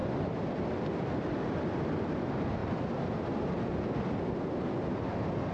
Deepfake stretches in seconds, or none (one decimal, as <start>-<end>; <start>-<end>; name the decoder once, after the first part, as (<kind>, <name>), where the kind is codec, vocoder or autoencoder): none